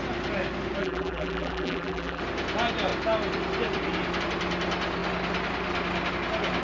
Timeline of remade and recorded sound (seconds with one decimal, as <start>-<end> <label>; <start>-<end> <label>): 0.0-0.8 recorded; 0.8-2.2 remade; 2.2-6.6 recorded